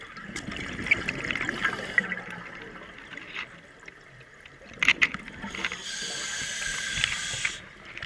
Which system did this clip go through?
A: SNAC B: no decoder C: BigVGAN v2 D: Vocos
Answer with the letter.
B